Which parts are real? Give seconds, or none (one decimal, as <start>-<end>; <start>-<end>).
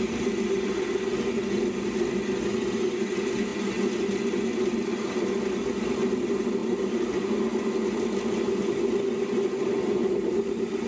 0.0-6.6; 7.4-10.0